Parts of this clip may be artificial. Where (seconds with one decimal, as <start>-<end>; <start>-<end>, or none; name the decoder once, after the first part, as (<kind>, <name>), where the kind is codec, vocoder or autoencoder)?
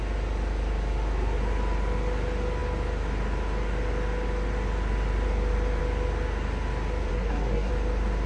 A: 7.1-7.7 (codec, SNAC)